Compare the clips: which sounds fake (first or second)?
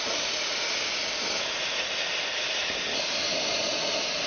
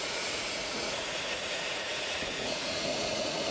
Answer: second